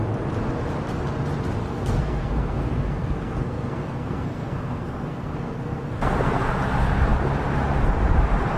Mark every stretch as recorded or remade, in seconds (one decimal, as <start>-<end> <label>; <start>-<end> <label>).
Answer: 0.0-1.6 recorded; 1.6-6.5 remade; 6.5-8.6 recorded